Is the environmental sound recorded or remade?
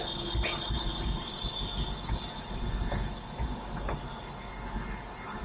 recorded